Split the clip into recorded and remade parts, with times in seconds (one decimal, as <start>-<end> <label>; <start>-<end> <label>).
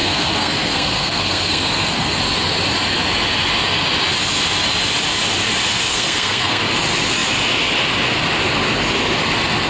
0.0-2.2 remade; 2.2-5.9 recorded; 5.9-6.6 remade; 6.6-9.7 recorded